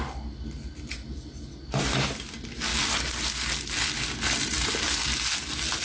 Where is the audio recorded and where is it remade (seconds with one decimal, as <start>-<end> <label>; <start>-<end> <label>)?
0.0-5.8 recorded